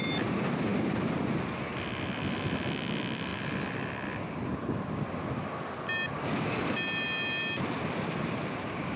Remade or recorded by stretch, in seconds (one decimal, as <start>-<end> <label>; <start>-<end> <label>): 0.0-9.0 recorded